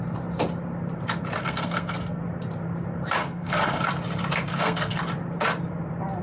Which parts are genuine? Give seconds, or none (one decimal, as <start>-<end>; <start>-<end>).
0.0-1.4; 2.2-3.2; 3.9-4.5; 5.0-6.2